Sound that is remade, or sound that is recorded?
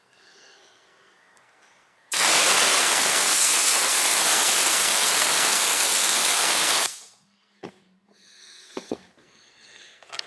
remade